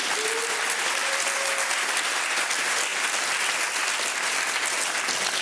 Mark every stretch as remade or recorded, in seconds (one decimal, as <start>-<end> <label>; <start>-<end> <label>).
0.0-5.4 recorded